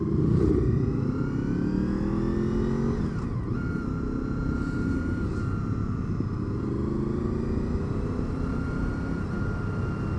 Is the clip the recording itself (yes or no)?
yes